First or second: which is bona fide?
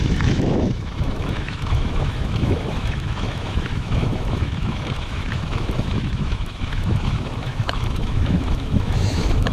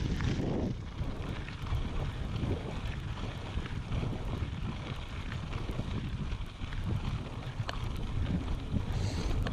second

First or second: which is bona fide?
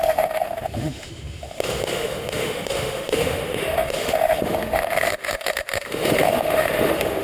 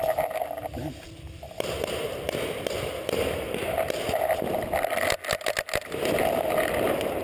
second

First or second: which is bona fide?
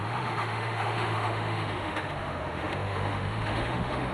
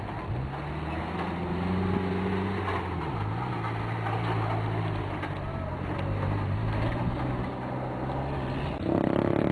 second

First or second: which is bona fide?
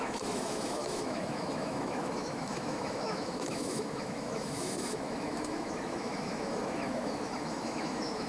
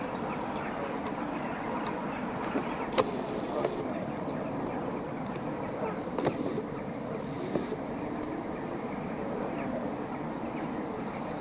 second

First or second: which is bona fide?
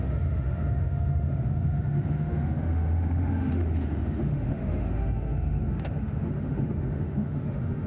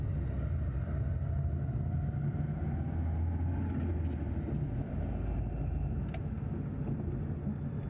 second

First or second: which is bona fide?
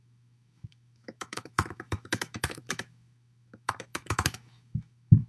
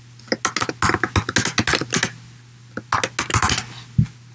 second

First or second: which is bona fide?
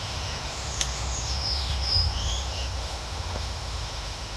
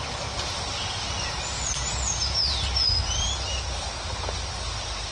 second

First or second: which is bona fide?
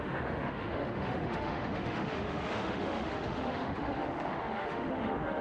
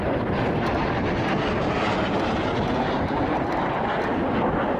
second